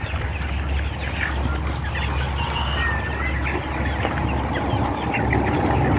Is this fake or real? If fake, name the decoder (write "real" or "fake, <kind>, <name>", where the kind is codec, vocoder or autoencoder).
real